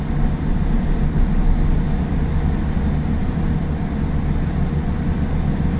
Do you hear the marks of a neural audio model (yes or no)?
no